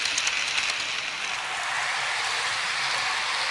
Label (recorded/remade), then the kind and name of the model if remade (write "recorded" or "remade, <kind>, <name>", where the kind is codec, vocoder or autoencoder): recorded